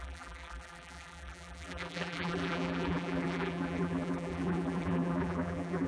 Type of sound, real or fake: fake